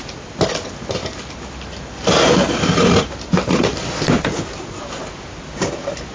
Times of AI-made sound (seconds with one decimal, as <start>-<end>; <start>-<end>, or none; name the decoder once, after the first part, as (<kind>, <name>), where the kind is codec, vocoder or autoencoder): none